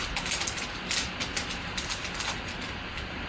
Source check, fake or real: real